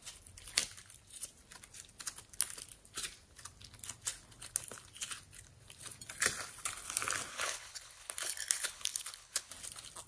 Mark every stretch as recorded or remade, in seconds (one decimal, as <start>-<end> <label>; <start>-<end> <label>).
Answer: 0.0-7.3 recorded; 7.3-9.5 remade; 9.5-10.1 recorded